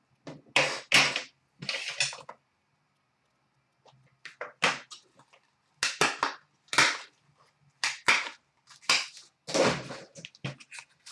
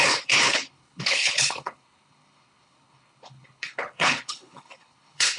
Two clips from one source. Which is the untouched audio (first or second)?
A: first